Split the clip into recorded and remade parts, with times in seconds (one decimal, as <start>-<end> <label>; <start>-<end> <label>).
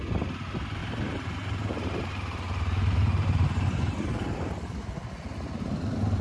0.0-0.8 recorded; 0.8-4.5 remade; 4.5-6.2 recorded